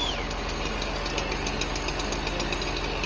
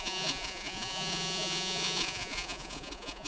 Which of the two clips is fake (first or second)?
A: second